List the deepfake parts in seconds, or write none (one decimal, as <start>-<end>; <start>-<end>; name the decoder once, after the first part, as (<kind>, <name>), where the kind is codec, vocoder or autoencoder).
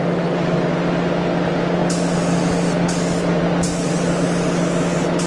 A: none